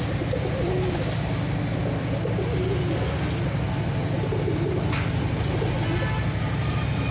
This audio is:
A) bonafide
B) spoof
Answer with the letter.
A